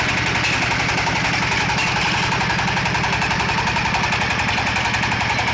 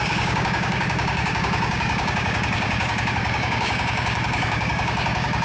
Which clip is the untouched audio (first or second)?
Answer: first